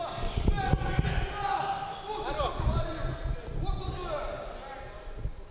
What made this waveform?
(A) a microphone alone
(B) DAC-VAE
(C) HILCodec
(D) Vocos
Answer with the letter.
A